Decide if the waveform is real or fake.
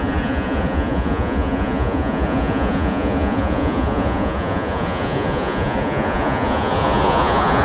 fake